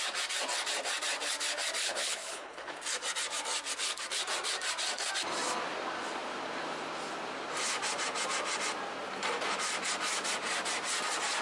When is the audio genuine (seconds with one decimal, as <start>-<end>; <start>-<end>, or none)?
0.0-1.8; 2.8-11.4

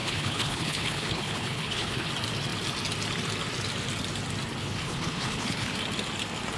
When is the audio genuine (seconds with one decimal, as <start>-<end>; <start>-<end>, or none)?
2.1-4.6; 5.7-6.6

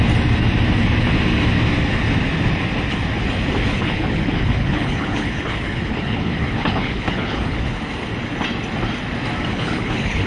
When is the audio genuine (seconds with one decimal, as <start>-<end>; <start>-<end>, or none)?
0.0-3.7; 7.8-9.5

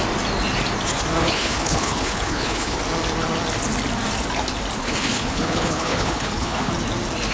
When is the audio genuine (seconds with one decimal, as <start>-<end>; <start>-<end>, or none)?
0.0-1.2; 2.8-4.8; 6.7-7.3

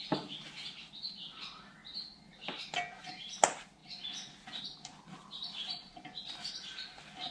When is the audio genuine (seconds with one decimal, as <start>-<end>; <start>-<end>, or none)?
0.0-7.3

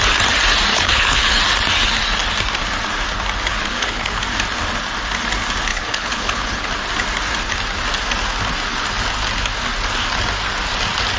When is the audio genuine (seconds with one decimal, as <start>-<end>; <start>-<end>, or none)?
0.0-0.7; 1.3-3.5; 4.2-5.7; 6.7-11.2